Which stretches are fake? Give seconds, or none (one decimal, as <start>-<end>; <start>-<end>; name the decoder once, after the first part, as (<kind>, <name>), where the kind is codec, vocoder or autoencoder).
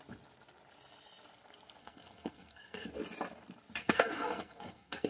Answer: 1.8-2.9 (codec, SNAC); 3.8-5.1